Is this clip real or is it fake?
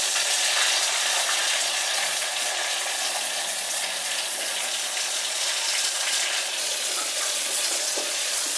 fake